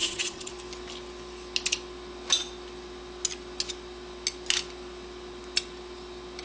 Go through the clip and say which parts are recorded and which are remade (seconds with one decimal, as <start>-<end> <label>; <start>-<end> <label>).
0.0-0.5 remade; 0.5-6.4 recorded